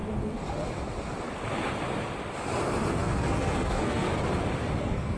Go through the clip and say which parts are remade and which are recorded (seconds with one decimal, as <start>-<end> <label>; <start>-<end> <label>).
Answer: 0.0-2.9 recorded; 2.9-4.1 remade; 4.1-4.8 recorded; 4.8-5.2 remade